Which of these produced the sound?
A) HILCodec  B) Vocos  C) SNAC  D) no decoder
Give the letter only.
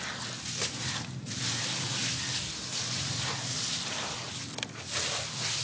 D